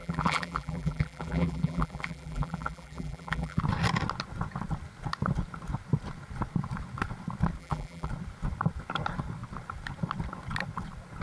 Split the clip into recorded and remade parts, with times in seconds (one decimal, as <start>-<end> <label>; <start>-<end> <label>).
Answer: 0.0-3.6 remade; 3.6-7.6 recorded; 7.6-8.1 remade; 8.1-11.2 recorded

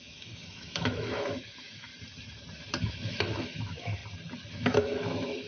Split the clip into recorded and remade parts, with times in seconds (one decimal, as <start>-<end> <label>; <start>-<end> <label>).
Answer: 0.0-1.9 remade; 1.9-2.8 recorded; 2.8-4.0 remade; 4.0-4.5 recorded; 4.5-5.5 remade